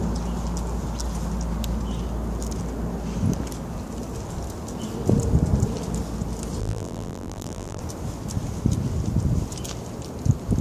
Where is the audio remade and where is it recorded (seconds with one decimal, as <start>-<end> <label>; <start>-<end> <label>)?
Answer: 0.0-6.6 recorded; 6.6-7.8 remade; 7.8-10.6 recorded